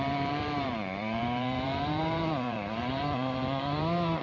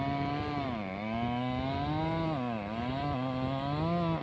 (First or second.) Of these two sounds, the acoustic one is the second